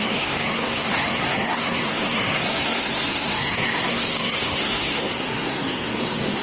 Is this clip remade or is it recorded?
remade